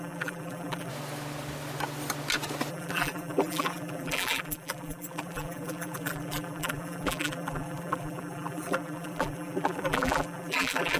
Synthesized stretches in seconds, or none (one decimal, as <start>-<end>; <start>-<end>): 0.0-0.9; 2.7-11.0